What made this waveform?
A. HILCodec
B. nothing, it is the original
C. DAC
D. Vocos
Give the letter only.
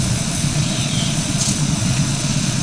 D